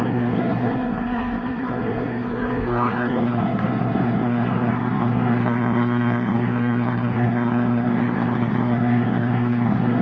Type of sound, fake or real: fake